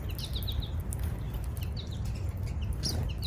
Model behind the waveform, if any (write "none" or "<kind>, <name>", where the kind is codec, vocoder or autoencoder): none